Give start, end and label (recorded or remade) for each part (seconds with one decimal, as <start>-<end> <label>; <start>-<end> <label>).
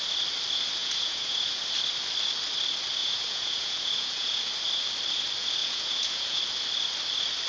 0.0-0.8 recorded; 0.8-1.6 remade; 1.6-3.0 recorded; 3.0-4.4 remade; 4.4-5.6 recorded; 5.6-6.4 remade; 6.4-7.5 recorded